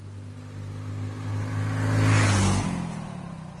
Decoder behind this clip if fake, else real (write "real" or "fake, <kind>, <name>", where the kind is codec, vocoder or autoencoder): real